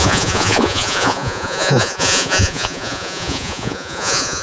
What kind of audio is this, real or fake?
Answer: fake